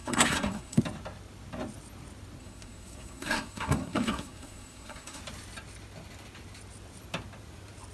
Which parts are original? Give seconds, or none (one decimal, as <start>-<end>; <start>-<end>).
0.8-2.4; 5.2-7.9